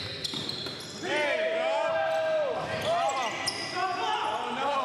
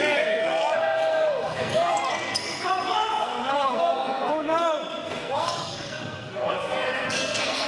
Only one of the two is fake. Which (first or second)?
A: second